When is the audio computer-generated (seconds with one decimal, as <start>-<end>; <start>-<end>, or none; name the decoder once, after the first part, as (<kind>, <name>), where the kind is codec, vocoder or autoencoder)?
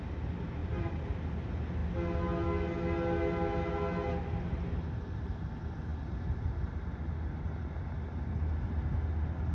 0.6-1.3 (vocoder, BigVGAN v2)